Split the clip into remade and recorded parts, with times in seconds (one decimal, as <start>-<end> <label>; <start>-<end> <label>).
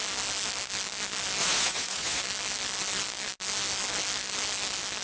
0.0-1.4 recorded; 1.4-2.2 remade; 2.2-5.0 recorded